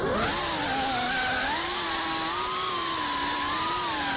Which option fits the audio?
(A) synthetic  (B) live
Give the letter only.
B